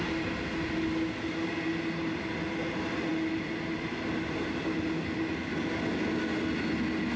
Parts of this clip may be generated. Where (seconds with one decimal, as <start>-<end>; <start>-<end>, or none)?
none